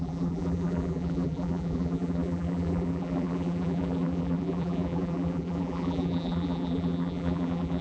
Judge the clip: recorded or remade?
remade